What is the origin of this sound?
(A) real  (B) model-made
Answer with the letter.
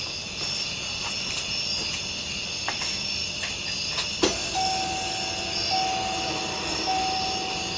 A